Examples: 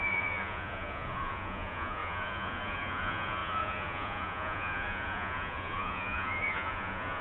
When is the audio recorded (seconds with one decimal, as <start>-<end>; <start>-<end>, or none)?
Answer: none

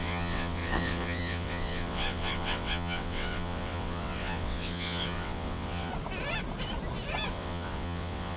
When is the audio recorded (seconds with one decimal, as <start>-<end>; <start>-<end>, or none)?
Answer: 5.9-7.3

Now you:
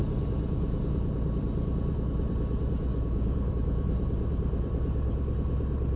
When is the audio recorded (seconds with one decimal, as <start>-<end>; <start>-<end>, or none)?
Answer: 0.0-2.9; 3.5-6.0